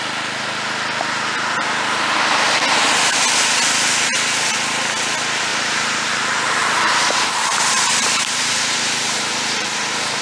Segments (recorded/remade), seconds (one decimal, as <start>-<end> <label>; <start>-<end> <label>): 0.0-5.5 recorded; 5.5-10.2 remade